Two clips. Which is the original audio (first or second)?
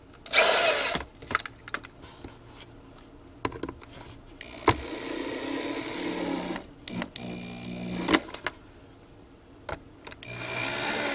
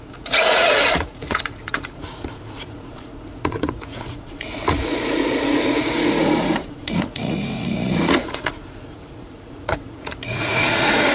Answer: first